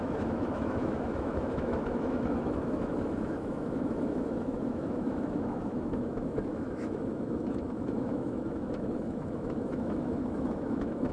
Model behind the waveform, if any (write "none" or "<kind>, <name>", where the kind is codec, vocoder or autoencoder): autoencoder, DAC-VAE